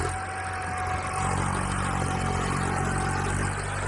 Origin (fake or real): real